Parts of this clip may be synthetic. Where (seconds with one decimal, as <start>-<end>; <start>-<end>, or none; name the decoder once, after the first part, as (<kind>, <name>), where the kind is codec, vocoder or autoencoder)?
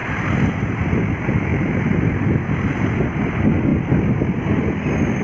1.5-2.2 (vocoder, BigVGAN v2)